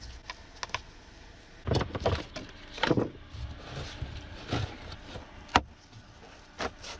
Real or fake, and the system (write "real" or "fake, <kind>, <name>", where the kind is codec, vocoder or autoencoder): real